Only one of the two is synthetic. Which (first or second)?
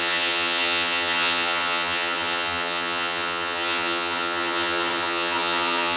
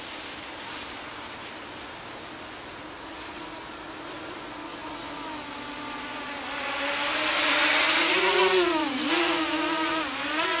first